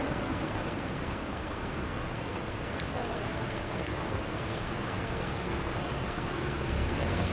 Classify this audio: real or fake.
fake